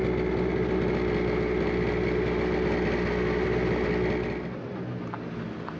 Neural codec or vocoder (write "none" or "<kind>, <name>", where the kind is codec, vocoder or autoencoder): none